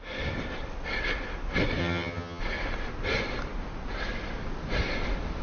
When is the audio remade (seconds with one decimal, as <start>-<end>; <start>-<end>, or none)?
1.8-2.4